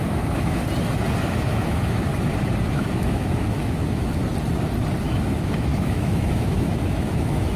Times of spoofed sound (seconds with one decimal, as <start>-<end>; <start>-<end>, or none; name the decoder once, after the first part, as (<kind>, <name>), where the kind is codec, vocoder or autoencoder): 0.0-0.6 (autoencoder, DAC-VAE); 1.2-2.1; 2.7-4.2; 5.0-7.6